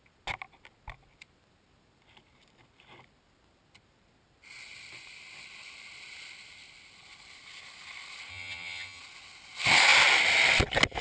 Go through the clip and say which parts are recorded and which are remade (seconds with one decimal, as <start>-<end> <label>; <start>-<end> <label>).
0.0-8.3 recorded; 8.3-9.0 remade; 9.0-11.0 recorded